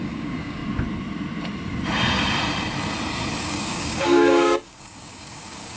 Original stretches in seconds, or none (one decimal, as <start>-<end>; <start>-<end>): 0.6-3.4